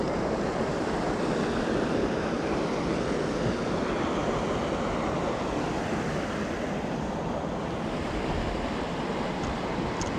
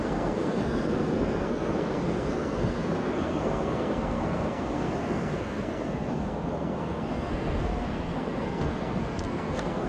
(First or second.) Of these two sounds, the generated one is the second